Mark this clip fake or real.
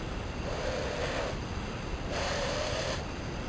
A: real